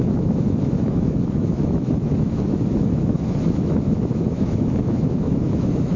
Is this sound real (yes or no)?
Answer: no